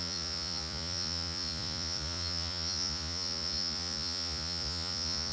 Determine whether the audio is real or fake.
fake